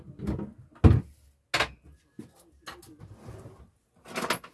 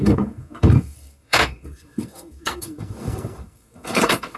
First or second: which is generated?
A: second